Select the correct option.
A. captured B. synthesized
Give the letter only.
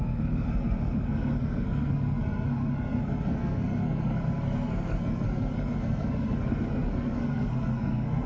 B